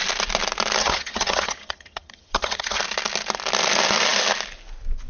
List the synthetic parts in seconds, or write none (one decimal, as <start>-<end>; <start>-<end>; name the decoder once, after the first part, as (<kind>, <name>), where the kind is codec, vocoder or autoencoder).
0.8-2.8 (vocoder, HiFi-GAN)